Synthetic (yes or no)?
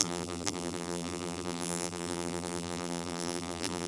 yes